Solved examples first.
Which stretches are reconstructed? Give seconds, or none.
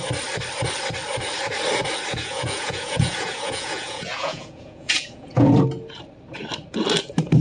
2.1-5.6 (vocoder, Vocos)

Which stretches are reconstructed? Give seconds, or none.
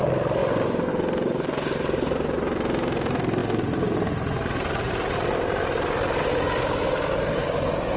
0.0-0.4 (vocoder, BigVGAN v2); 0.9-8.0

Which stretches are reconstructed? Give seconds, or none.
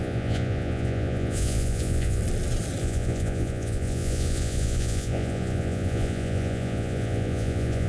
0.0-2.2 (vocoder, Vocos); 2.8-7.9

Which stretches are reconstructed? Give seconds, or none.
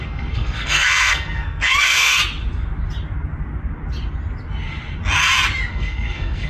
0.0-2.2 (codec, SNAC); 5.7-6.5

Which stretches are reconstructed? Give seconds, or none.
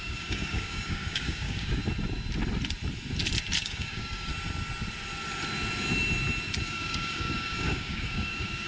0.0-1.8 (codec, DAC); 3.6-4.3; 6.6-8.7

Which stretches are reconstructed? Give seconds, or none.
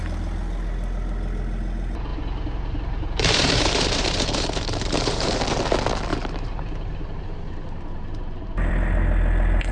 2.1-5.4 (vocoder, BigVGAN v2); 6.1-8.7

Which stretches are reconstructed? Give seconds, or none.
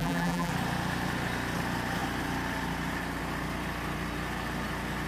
0.0-0.5 (vocoder, BigVGAN v2)